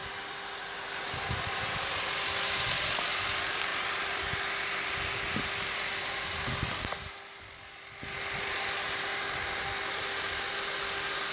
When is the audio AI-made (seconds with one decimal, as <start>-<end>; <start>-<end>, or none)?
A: 3.7-4.2